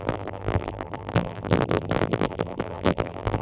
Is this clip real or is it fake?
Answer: fake